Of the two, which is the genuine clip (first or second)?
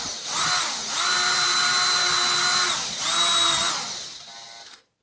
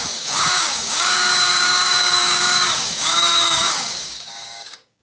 first